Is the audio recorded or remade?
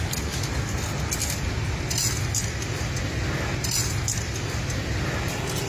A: recorded